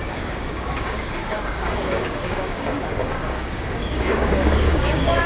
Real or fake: fake